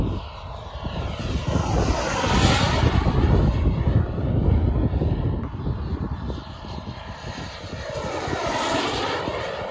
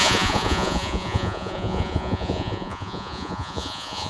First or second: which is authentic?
first